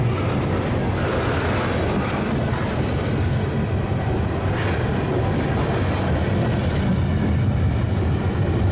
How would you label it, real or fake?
real